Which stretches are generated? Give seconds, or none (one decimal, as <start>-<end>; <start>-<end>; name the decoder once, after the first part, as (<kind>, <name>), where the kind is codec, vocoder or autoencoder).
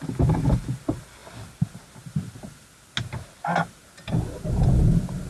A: none